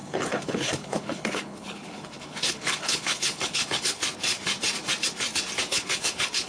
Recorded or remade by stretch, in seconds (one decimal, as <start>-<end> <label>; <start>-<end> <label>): 0.0-4.0 remade; 4.0-5.7 recorded; 5.7-6.5 remade